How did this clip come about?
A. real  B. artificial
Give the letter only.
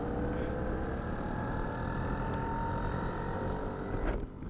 A